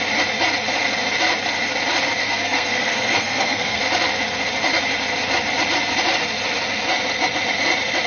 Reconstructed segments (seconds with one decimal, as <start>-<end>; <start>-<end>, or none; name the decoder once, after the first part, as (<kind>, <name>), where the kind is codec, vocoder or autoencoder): 2.2-3.8 (codec, SNAC)